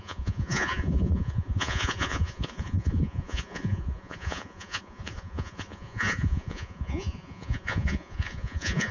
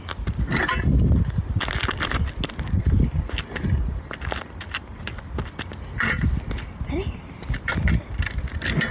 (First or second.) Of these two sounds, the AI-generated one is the first